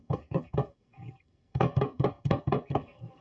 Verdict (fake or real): fake